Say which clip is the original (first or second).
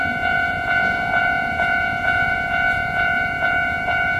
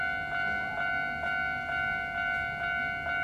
second